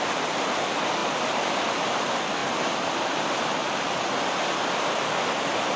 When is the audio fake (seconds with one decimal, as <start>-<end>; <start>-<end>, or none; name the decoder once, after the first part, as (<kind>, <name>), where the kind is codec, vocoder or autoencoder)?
none